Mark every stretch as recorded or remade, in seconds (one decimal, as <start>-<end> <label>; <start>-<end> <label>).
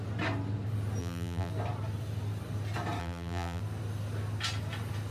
0.0-1.0 recorded; 1.0-1.5 remade; 1.5-3.0 recorded; 3.0-3.6 remade; 3.6-5.1 recorded